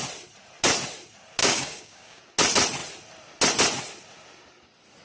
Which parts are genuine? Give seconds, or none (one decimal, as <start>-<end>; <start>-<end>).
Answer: 0.0-1.4; 2.2-5.0